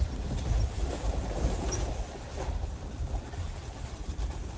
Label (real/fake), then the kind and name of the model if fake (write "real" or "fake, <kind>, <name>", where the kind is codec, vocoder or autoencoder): real